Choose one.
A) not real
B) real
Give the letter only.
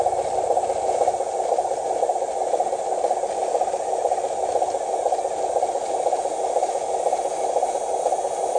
B